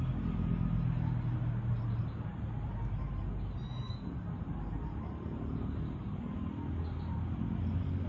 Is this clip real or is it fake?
real